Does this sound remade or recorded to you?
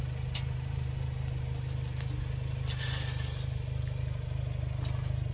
recorded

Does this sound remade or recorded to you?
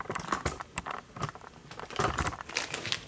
recorded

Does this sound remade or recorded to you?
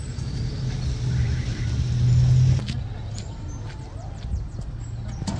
recorded